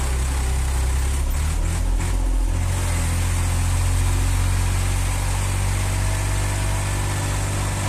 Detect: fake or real real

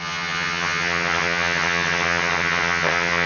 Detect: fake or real fake